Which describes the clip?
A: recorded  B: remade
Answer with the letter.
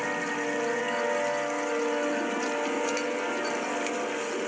A